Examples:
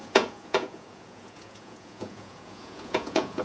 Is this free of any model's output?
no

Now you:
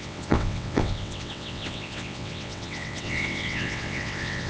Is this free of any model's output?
no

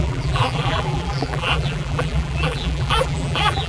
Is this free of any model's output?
no